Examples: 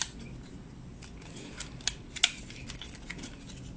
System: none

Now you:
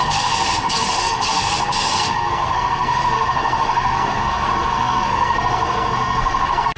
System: codec, SNAC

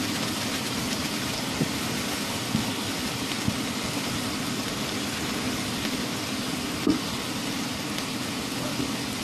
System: none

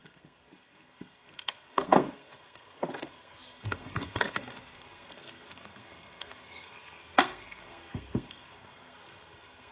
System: codec, SNAC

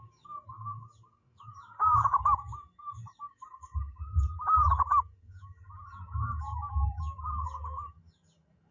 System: autoencoder, DAC-VAE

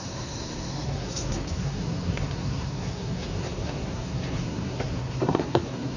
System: codec, SNAC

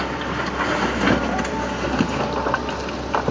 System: none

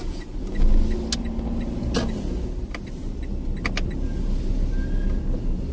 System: none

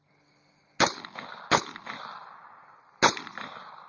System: none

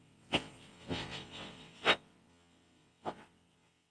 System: vocoder, WaveNeXt